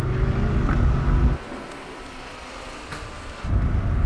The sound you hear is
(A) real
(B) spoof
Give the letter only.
A